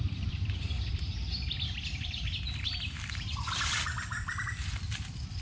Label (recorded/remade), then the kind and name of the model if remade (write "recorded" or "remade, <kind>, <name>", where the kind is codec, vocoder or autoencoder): remade, vocoder, BigVGAN v2